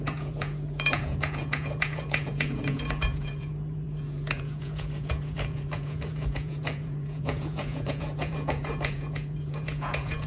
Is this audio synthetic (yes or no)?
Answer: yes